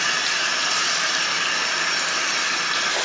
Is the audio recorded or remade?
recorded